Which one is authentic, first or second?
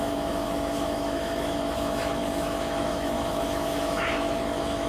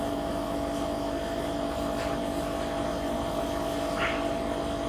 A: second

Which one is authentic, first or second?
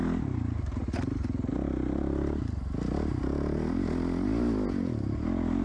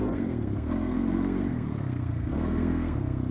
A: first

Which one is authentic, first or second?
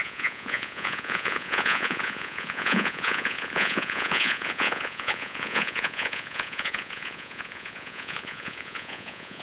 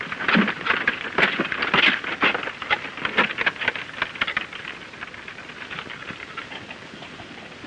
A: second